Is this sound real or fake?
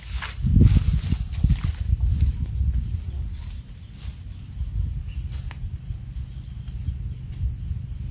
real